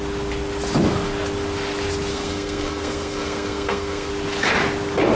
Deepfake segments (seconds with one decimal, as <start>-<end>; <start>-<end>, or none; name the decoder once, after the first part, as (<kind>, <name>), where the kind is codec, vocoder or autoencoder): 2.1-4.1 (codec, SNAC)